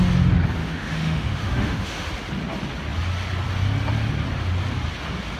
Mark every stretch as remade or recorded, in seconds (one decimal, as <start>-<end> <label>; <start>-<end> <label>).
0.0-0.6 recorded; 0.6-2.1 remade; 2.1-5.4 recorded